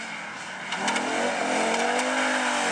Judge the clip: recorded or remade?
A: recorded